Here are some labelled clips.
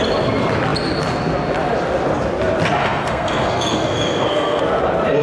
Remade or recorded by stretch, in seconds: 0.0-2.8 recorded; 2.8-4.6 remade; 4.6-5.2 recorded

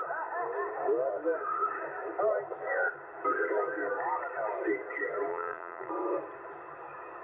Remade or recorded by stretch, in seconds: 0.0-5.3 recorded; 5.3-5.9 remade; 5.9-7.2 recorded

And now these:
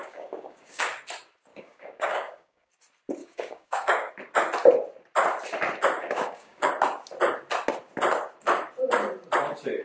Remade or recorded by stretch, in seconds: 0.0-0.9 remade; 0.9-1.5 recorded; 1.5-2.7 remade; 2.7-3.2 recorded; 3.2-4.1 remade; 4.1-6.0 recorded; 6.0-6.7 remade; 6.7-9.8 recorded